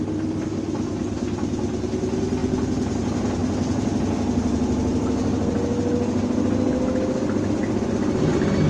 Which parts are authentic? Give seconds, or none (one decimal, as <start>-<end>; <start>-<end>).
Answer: 0.0-8.7